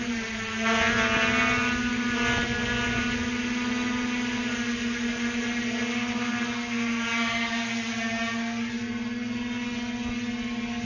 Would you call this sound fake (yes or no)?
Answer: no